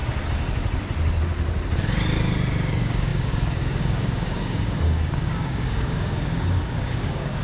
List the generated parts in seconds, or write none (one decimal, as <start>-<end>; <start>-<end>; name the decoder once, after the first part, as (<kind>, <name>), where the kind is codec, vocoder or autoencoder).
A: 2.7-7.4 (codec, DAC)